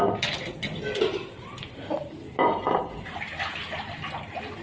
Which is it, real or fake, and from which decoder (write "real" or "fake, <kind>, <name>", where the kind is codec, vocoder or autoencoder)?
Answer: real